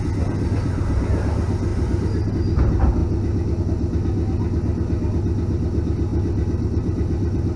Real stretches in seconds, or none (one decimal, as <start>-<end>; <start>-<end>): 0.0-1.7; 2.3-6.1